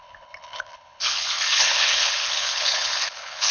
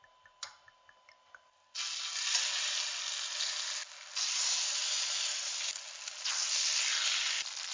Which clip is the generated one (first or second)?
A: first